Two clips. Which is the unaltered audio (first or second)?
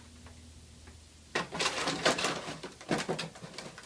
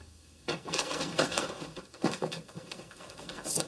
first